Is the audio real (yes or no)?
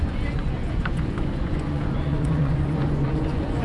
no